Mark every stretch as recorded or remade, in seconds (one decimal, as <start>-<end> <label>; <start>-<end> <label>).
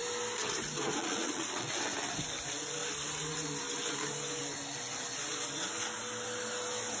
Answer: 0.0-1.0 recorded; 1.0-1.7 remade; 1.7-7.0 recorded